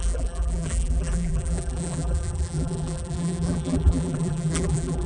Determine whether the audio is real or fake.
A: fake